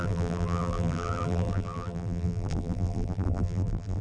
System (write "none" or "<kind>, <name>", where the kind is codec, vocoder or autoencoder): vocoder, BigVGAN v2